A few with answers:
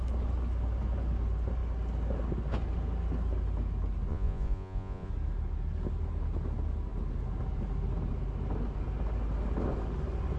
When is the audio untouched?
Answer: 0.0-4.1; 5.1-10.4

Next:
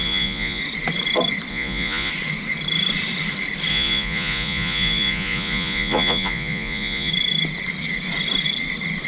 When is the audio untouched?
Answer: 0.6-1.5; 2.1-3.7; 7.1-9.1

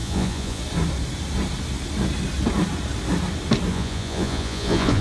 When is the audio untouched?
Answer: 0.6-3.7

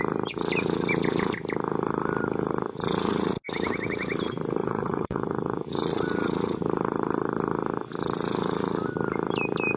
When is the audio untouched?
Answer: 0.0-4.6; 6.0-9.8

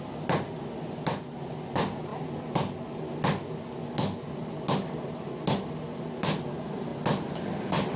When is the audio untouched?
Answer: 0.0-8.0